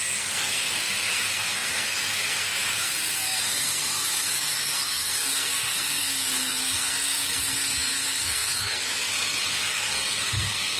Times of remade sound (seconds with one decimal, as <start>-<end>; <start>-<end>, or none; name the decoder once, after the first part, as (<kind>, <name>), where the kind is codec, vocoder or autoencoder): 0.0-10.8 (codec, SNAC)